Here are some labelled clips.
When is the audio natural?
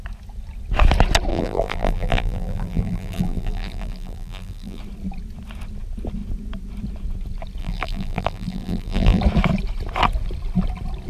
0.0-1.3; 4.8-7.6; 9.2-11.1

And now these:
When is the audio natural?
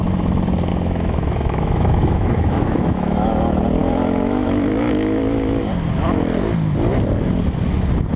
0.0-0.7; 3.3-3.8; 5.6-8.2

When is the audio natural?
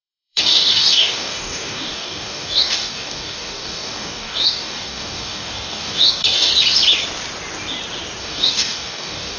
6.5-8.2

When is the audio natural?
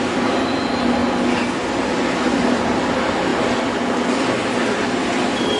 0.0-5.6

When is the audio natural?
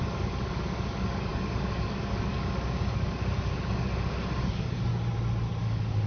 3.9-4.5; 4.9-5.6